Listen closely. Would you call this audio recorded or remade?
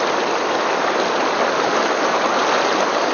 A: recorded